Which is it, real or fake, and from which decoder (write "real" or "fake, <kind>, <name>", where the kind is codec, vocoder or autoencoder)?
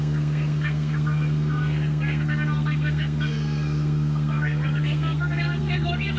fake, codec, SNAC